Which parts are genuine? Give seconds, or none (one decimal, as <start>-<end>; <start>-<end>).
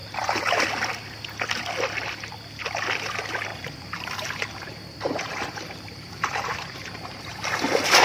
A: 0.5-3.5; 7.2-8.0